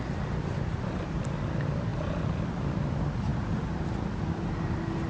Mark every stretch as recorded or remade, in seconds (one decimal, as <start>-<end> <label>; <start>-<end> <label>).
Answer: 0.0-5.1 recorded